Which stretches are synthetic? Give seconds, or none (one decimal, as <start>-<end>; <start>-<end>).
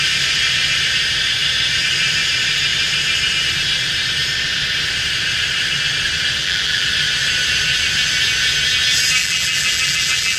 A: 6.4-6.9; 9.2-10.4